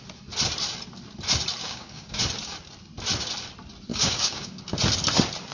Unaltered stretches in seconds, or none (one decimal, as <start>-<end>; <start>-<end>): 0.0-1.6; 2.2-3.9; 4.6-5.5